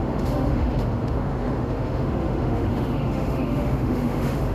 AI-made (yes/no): yes